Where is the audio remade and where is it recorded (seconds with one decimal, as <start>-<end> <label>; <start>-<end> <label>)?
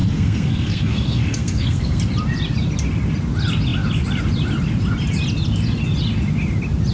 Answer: 0.0-2.0 remade; 2.0-6.9 recorded